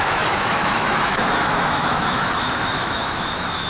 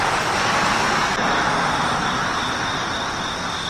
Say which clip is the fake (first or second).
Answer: first